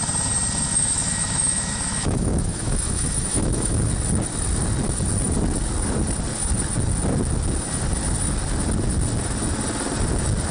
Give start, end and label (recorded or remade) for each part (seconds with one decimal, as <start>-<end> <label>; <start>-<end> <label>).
0.0-0.7 recorded; 0.7-3.9 remade; 3.9-10.5 recorded